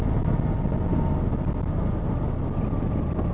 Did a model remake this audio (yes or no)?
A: no